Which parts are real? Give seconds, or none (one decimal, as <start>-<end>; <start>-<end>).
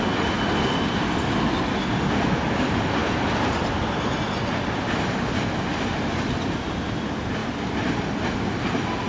0.0-7.4; 8.2-9.1